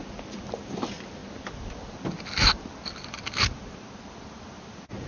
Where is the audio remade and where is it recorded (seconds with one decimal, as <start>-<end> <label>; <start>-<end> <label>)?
0.0-5.1 recorded